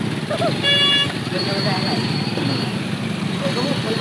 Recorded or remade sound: recorded